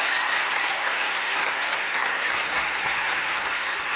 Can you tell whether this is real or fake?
fake